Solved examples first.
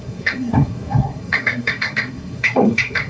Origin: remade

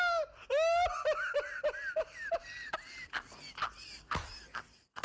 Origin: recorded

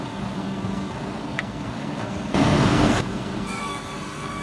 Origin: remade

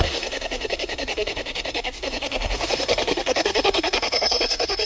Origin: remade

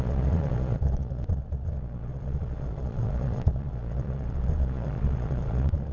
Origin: remade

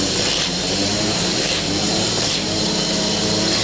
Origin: remade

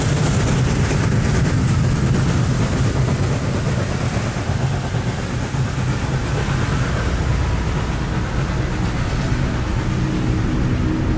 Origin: recorded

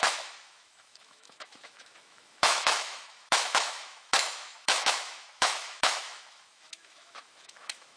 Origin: remade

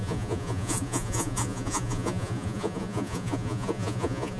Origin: remade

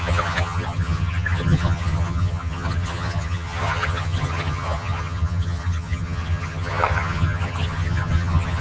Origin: remade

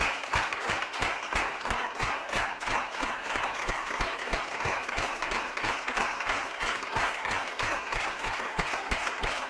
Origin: remade